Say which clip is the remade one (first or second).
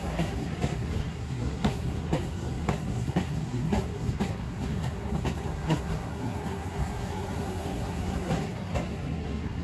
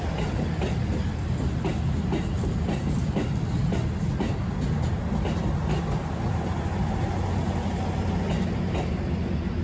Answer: first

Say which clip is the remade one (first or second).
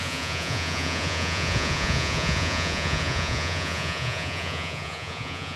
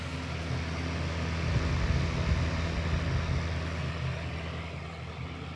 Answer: first